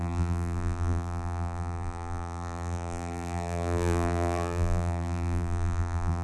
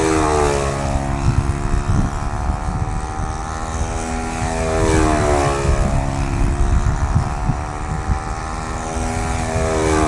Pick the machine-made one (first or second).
first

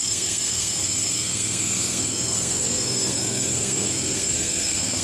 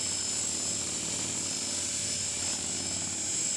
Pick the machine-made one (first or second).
first